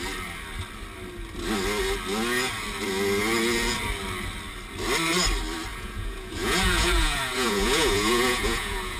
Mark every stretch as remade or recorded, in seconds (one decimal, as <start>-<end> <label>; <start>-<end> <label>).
0.0-5.7 recorded; 5.7-9.0 remade